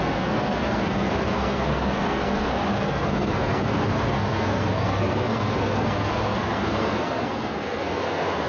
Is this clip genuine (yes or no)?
no